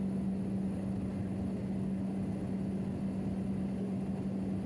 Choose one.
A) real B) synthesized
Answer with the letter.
A